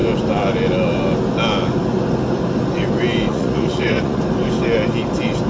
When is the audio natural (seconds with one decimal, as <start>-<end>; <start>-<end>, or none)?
0.0-3.3; 4.2-5.5